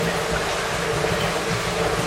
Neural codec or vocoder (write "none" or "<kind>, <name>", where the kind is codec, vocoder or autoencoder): none